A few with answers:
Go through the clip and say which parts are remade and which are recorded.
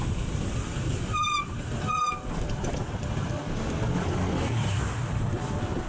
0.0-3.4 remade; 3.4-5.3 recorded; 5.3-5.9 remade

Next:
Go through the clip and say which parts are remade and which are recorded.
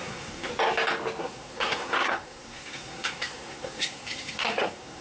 0.0-0.5 remade; 0.5-1.2 recorded; 1.2-5.0 remade